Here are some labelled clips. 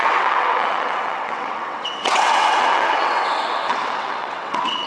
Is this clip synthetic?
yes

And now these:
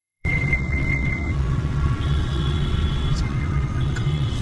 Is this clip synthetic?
yes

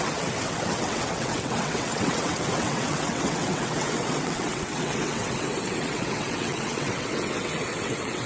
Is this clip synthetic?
yes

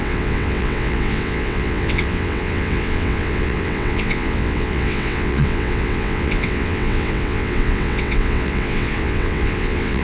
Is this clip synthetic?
yes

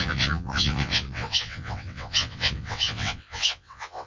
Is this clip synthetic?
yes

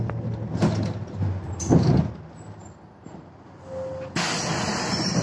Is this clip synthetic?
no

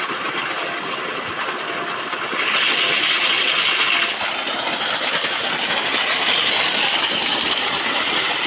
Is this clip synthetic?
no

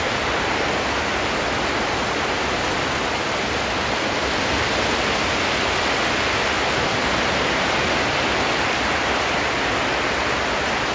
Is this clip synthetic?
no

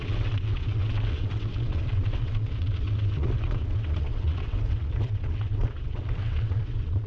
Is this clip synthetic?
yes